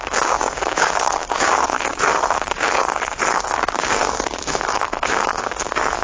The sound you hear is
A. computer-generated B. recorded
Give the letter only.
A